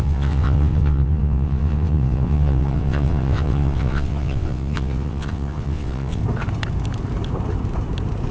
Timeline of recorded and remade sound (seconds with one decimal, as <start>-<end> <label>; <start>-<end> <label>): 0.0-6.2 remade; 6.2-8.3 recorded

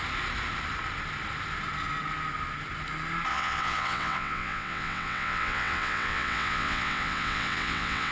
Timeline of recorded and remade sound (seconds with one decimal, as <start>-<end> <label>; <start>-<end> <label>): 0.0-3.3 recorded; 3.3-8.1 remade

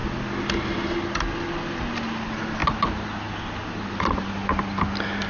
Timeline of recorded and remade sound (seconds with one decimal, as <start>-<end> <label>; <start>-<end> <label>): 0.0-5.3 recorded

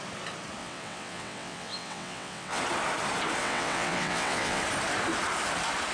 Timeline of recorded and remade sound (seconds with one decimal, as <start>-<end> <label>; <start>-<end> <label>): 0.0-0.6 recorded; 0.6-2.6 remade; 2.6-3.4 recorded; 3.4-4.6 remade; 4.6-5.9 recorded

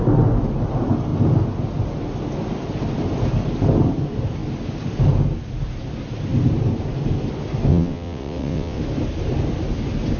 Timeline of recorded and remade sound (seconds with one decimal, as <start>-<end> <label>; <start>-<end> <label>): 0.0-7.7 recorded; 7.7-8.8 remade; 8.8-10.2 recorded

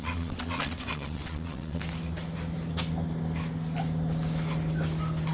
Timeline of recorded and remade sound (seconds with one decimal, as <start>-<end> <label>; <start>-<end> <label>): 0.0-1.8 remade; 1.8-5.3 recorded